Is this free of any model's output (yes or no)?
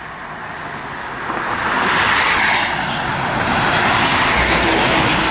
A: yes